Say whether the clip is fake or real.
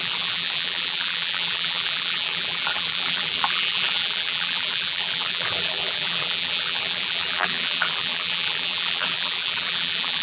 fake